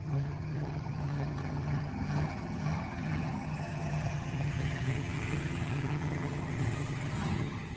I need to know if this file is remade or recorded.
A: remade